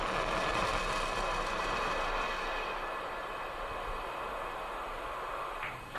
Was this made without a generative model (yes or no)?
yes